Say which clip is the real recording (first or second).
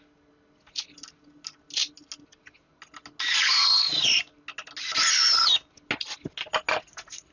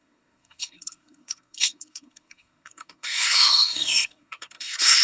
first